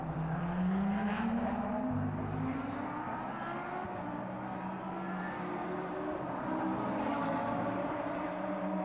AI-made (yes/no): no